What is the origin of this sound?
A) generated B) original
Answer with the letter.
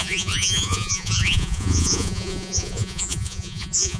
A